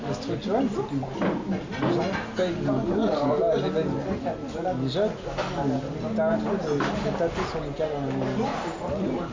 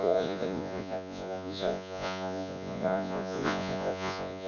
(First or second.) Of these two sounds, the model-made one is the second